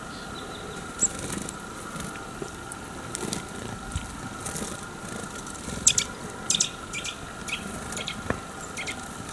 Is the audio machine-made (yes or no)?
no